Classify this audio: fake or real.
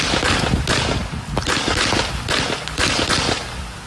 real